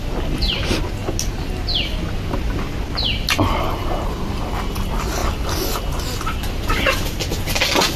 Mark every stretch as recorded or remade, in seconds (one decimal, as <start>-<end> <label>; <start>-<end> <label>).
0.0-8.0 recorded